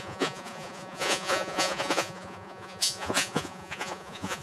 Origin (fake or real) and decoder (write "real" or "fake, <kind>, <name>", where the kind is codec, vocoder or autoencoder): fake, vocoder, Vocos